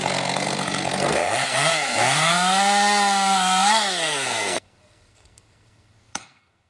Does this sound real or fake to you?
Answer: fake